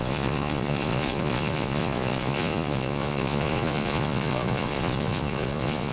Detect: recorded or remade remade